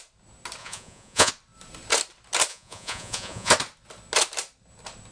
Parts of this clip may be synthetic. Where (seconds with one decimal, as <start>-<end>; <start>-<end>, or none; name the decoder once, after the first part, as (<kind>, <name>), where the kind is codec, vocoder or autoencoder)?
0.6-1.3 (vocoder, Vocos); 2.5-3.5